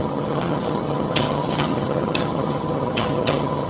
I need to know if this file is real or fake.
fake